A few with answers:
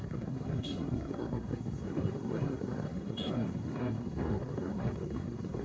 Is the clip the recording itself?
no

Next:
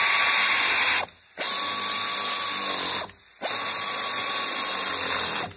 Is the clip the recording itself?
yes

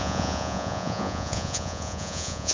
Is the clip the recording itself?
no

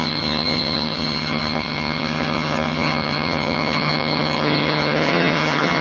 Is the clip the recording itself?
no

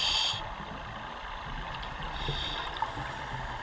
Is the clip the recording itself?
yes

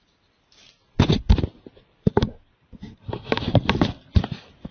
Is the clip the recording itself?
yes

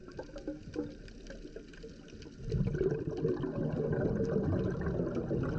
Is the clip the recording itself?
yes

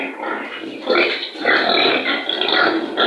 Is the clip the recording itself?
yes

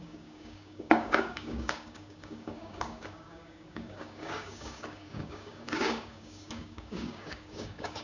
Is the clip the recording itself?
no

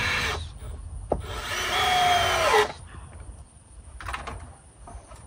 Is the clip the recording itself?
yes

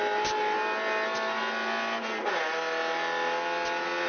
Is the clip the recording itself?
yes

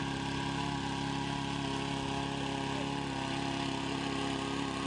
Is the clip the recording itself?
yes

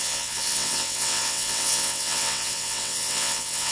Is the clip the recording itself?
no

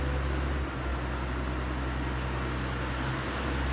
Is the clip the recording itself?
yes